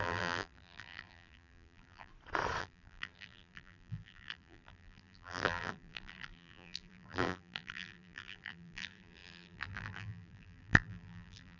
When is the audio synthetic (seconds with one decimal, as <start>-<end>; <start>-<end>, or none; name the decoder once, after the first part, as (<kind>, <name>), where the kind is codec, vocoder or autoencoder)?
0.0-2.1 (vocoder, BigVGAN v2); 2.6-11.6